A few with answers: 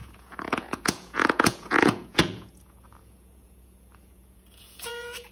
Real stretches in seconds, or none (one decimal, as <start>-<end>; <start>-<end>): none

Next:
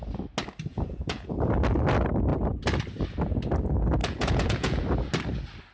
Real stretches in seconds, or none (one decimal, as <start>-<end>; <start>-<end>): 0.0-0.7; 1.3-4.0; 4.8-5.7

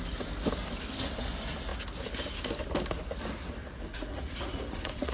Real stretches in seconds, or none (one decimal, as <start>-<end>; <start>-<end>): 0.0-3.9

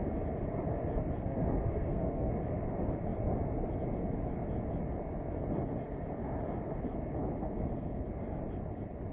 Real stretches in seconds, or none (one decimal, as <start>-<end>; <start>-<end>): 0.0-1.2; 2.3-9.1